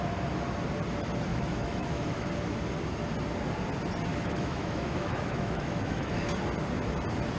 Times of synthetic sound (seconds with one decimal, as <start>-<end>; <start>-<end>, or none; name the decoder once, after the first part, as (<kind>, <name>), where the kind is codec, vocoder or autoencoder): 1.3-2.3 (autoencoder, DAC-VAE); 4.1-6.2